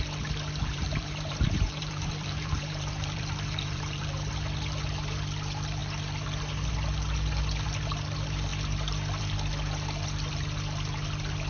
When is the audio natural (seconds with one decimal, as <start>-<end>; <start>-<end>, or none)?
0.0-0.6; 4.3-11.5